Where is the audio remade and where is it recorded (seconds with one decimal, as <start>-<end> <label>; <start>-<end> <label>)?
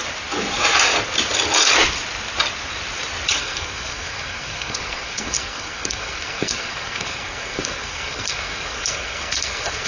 0.0-3.4 recorded; 3.4-9.9 remade